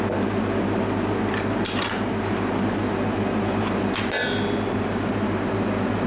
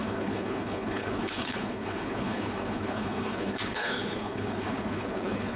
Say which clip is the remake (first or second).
second